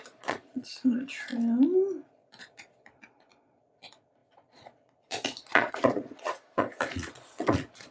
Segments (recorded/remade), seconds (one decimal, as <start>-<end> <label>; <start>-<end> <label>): 0.0-1.3 remade; 1.3-2.1 recorded; 2.1-7.9 remade